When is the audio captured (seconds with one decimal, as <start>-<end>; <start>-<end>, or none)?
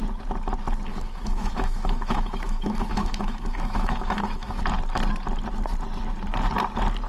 0.0-0.9; 4.6-7.1